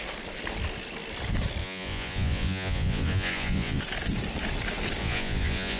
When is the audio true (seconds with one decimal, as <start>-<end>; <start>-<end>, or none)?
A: 0.0-1.6; 3.8-5.0